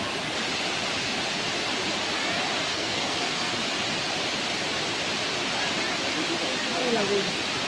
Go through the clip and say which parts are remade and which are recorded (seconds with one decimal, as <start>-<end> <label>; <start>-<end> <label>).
0.0-2.7 recorded; 2.7-3.5 remade; 3.5-7.7 recorded